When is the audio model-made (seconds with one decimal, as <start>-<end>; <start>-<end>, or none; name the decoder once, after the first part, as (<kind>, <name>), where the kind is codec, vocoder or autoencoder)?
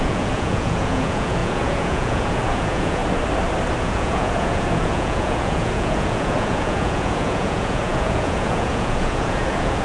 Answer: 0.0-3.0 (vocoder, Vocos); 3.8-9.8